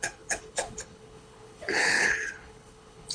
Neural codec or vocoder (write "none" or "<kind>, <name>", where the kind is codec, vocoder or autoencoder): codec, HILCodec